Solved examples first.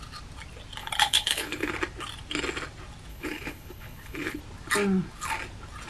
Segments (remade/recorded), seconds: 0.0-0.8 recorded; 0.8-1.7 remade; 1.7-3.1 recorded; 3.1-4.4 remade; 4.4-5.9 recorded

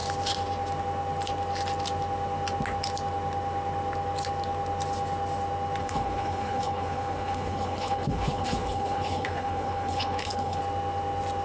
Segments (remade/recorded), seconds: 0.0-5.8 recorded; 5.8-10.6 remade; 10.6-11.4 recorded

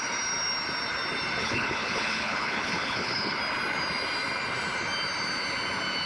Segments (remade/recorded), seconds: 0.0-1.4 recorded; 1.4-3.4 remade; 3.4-6.1 recorded

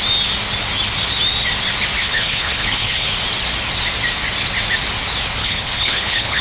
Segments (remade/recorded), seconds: 0.0-2.0 recorded; 2.0-3.1 remade; 3.1-5.4 recorded; 5.4-6.4 remade

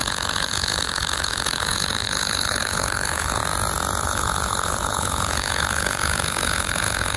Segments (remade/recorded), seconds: 0.0-3.4 remade; 3.4-4.0 recorded; 4.0-7.2 remade

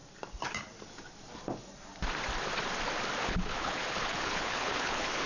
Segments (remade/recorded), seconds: 0.0-3.2 recorded; 3.2-5.3 remade

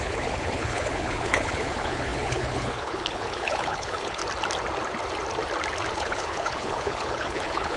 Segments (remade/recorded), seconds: 0.0-4.2 remade; 4.2-5.9 recorded; 5.9-7.8 remade